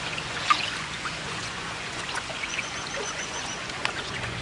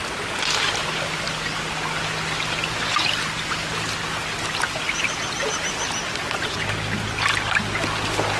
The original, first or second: second